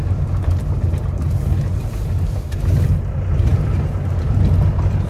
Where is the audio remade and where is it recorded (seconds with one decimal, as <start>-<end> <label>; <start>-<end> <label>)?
0.0-5.1 recorded